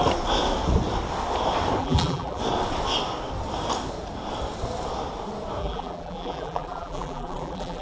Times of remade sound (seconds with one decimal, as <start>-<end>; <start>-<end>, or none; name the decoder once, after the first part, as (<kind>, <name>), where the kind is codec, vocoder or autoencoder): 1.8-2.4 (vocoder, BigVGAN v2); 5.6-7.8